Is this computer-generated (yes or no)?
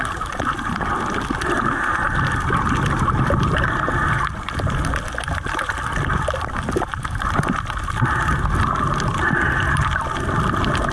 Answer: no